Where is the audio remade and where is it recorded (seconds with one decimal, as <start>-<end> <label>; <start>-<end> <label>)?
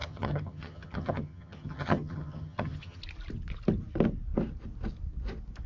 0.0-3.0 remade; 3.0-5.7 recorded